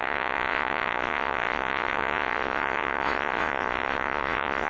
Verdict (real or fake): fake